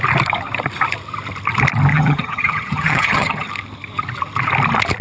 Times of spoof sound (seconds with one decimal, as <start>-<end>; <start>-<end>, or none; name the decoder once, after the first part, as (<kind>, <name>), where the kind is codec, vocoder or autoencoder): 1.9-3.5 (vocoder, HiFi-GAN)

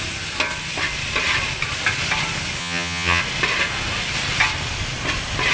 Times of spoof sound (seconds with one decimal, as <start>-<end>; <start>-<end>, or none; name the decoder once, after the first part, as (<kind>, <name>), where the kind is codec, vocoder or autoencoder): 2.6-3.2 (vocoder, HiFi-GAN)

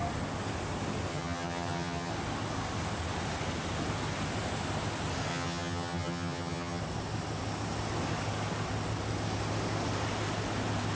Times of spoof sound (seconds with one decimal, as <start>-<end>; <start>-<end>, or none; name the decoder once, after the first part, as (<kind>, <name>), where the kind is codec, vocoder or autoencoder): 1.1-2.1 (vocoder, HiFi-GAN); 5.3-6.8

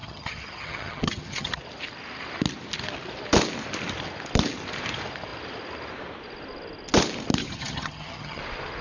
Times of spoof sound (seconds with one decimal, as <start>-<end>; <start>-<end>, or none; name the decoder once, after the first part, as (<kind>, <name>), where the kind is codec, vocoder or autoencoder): 0.0-1.6 (vocoder, HiFi-GAN); 7.4-8.4

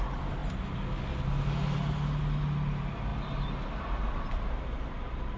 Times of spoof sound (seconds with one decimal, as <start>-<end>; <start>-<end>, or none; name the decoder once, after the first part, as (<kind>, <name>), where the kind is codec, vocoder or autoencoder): none

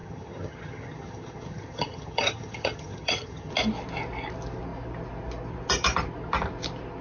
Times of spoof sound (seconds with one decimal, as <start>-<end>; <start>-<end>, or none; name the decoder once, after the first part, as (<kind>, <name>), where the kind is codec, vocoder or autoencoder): 0.0-3.5 (vocoder, HiFi-GAN)

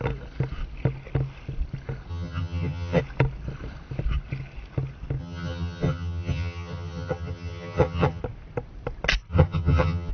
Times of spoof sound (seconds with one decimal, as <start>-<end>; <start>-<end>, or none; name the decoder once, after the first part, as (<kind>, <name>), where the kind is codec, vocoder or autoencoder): 2.1-3.0 (vocoder, HiFi-GAN); 5.2-8.2; 9.3-10.1

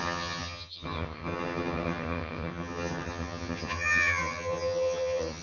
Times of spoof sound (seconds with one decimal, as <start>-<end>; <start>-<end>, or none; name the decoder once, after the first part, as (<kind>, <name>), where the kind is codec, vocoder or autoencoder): 0.0-5.4 (vocoder, HiFi-GAN)